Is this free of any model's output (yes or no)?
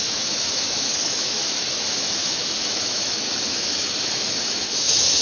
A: no